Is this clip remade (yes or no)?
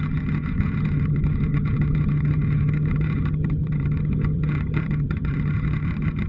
yes